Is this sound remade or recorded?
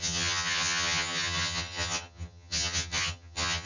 remade